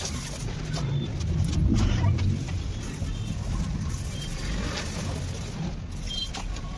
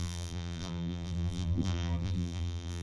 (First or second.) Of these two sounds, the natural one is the first